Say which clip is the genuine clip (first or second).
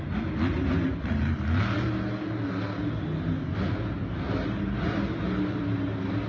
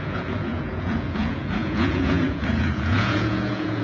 first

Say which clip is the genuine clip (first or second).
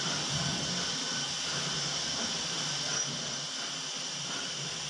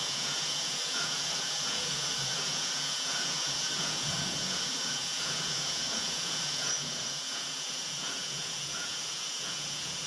first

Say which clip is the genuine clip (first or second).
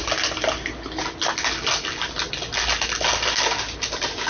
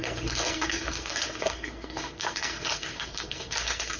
first